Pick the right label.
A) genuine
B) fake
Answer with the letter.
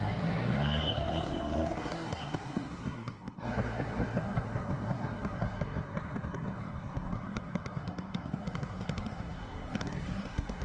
B